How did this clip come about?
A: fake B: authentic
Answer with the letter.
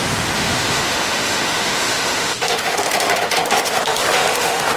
A